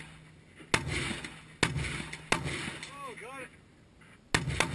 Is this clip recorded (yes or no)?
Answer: yes